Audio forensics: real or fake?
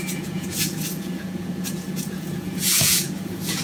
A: fake